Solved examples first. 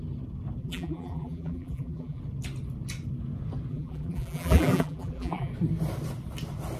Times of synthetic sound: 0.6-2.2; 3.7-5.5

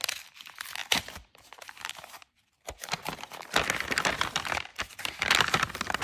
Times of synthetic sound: 0.8-3.3; 4.7-6.0

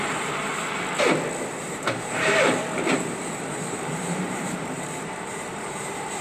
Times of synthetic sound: 0.0-0.5; 1.5-6.2

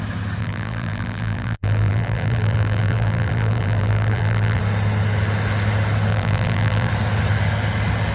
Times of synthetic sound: 0.4-4.6; 6.1-6.9

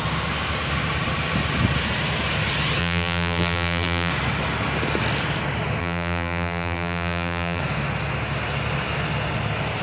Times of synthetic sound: 2.8-4.1; 5.8-7.6

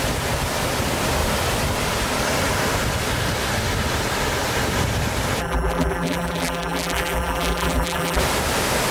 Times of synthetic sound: 5.4-8.2

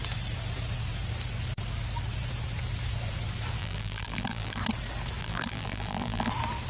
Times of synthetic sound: 3.6-4.6; 5.2-6.3

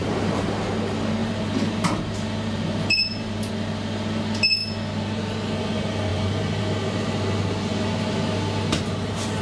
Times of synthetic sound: 0.0-0.7; 1.2-3.5; 6.1-6.6